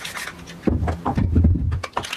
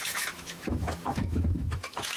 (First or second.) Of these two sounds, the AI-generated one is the second